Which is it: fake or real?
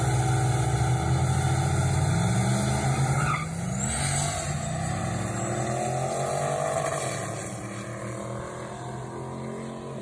real